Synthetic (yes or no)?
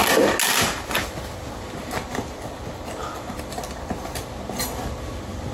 no